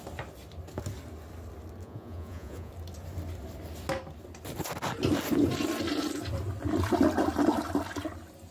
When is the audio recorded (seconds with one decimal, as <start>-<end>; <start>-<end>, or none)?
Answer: 0.0-1.8; 2.7-8.5